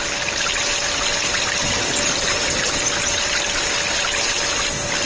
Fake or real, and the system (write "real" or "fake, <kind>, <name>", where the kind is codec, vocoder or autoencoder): real